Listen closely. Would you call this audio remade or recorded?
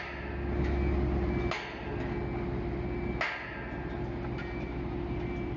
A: recorded